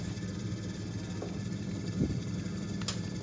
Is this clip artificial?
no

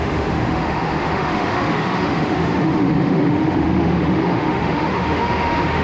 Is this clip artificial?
yes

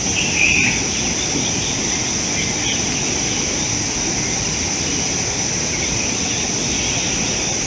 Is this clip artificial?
no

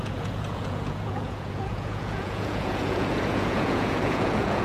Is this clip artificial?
yes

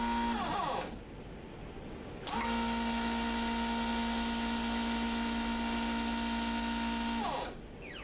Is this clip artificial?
no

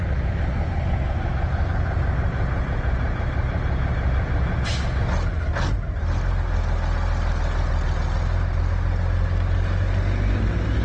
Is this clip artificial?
no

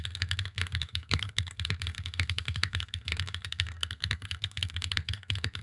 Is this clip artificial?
yes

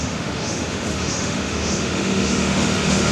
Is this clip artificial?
yes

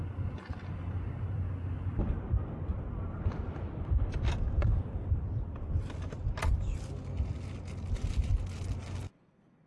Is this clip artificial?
no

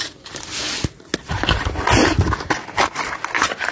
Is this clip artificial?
no